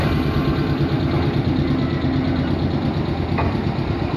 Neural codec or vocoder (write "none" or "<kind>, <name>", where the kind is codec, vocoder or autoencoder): none